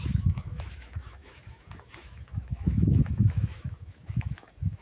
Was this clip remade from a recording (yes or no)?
yes